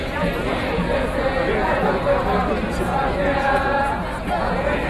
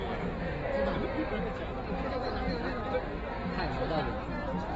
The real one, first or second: second